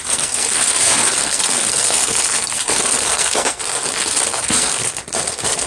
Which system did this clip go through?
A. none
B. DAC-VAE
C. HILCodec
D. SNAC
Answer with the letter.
D